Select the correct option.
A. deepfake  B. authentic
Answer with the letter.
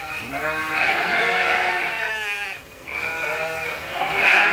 A